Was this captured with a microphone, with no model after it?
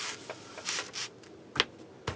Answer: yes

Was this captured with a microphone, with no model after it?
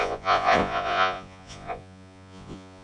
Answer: no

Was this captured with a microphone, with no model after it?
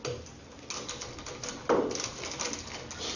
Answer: yes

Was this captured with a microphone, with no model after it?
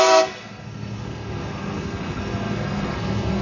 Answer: no